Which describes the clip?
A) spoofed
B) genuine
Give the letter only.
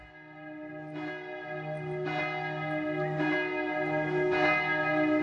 B